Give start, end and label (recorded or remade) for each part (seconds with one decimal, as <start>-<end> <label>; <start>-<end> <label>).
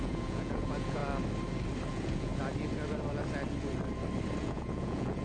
0.0-1.0 remade; 1.0-1.9 recorded; 1.9-2.3 remade; 2.3-4.4 recorded; 4.4-5.2 remade